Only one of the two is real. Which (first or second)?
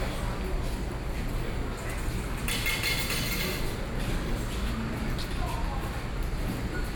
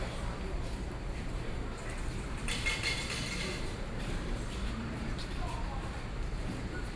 first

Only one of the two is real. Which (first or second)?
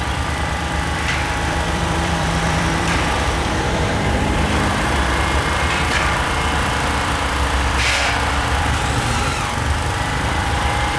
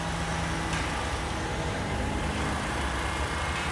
second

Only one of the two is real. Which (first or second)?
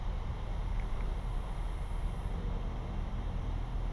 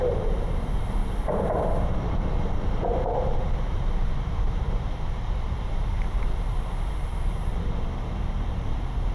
first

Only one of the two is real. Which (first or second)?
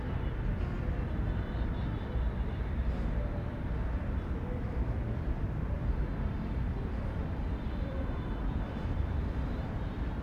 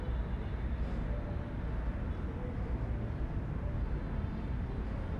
second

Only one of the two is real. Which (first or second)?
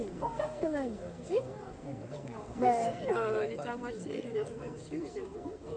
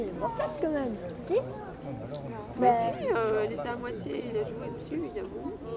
second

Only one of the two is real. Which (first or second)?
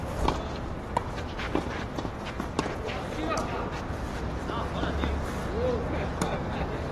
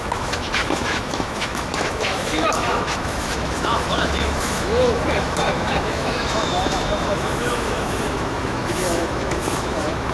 first